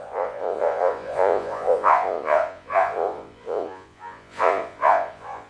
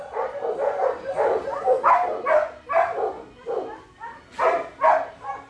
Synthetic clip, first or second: first